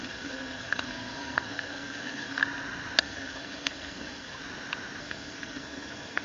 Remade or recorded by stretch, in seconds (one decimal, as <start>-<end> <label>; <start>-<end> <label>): 0.0-2.4 remade; 2.4-3.0 recorded; 3.0-4.4 remade; 4.4-5.0 recorded; 5.0-6.2 remade